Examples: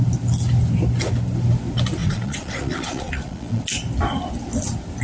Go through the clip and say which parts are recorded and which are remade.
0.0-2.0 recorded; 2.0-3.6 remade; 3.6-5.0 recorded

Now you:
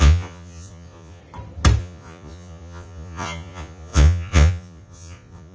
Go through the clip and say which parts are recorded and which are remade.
0.0-1.2 remade; 1.2-1.8 recorded; 1.8-5.5 remade

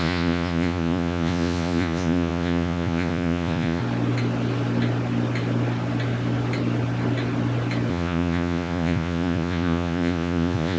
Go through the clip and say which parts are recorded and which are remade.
0.0-3.8 remade; 3.8-7.9 recorded; 7.9-10.8 remade

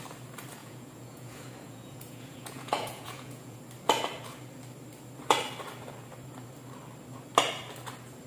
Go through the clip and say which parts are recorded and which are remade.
0.0-0.6 recorded; 0.6-3.6 remade; 3.6-8.3 recorded

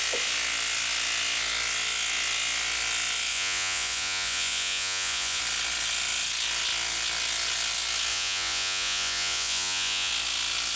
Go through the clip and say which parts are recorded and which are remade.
0.0-3.3 recorded; 3.3-5.4 remade; 5.4-8.1 recorded; 8.1-10.1 remade; 10.1-10.8 recorded